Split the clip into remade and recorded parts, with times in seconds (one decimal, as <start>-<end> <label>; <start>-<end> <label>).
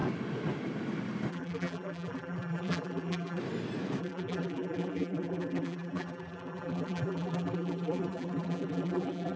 0.0-1.3 recorded; 1.3-3.4 remade; 3.4-4.0 recorded; 4.0-9.4 remade